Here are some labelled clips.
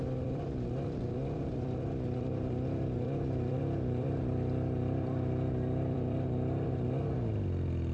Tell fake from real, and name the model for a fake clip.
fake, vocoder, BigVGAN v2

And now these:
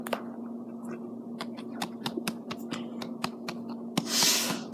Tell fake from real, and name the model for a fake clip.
real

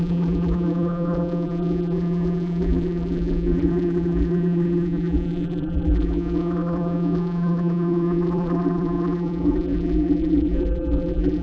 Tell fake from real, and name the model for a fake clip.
fake, vocoder, BigVGAN v2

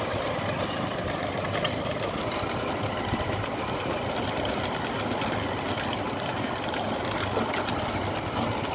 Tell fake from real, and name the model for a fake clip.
real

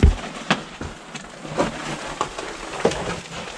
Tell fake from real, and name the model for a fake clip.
real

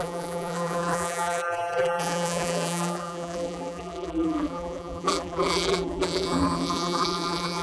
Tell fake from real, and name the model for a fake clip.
fake, vocoder, BigVGAN v2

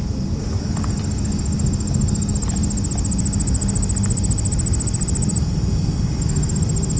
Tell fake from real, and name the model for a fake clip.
real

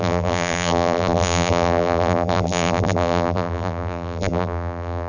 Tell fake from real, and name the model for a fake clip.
fake, vocoder, BigVGAN v2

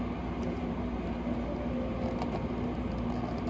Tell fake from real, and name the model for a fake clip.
real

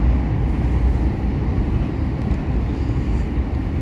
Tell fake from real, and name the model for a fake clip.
real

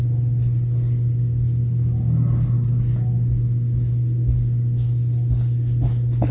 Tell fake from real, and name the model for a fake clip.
real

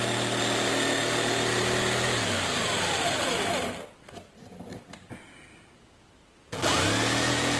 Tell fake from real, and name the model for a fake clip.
real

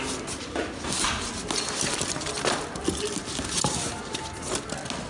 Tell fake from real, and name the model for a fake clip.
real